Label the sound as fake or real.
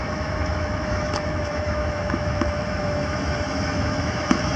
fake